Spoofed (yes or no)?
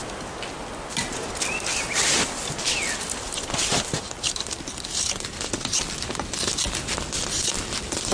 no